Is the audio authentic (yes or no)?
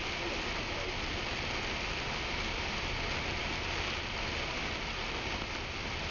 yes